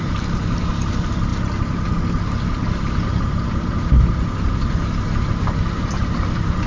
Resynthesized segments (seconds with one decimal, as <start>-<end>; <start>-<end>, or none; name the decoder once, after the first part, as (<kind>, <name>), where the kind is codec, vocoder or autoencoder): none